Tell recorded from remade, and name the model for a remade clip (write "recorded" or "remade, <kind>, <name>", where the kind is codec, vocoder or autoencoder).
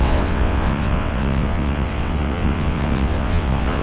remade, vocoder, WaveNeXt